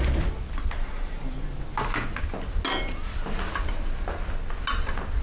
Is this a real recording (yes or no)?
yes